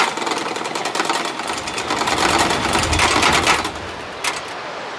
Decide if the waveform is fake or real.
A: real